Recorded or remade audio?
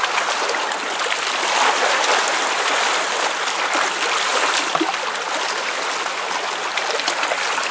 recorded